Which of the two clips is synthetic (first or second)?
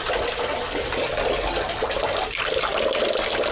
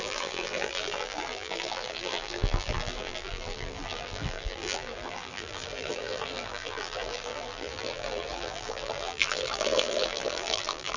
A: second